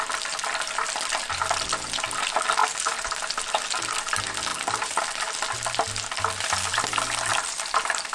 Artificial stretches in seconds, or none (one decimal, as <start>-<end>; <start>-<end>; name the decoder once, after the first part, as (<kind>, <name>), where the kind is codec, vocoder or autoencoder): 2.6-3.2 (vocoder, BigVGAN v2); 4.5-5.0; 7.3-8.1